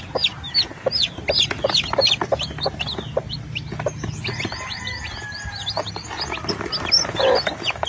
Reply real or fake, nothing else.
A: real